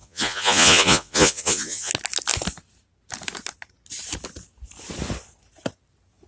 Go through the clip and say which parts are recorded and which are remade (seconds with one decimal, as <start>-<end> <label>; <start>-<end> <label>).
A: 0.0-1.9 remade; 1.9-6.3 recorded